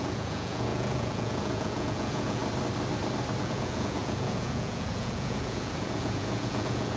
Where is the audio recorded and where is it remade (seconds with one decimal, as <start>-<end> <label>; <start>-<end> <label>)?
0.0-2.4 remade; 2.4-3.4 recorded; 3.4-7.0 remade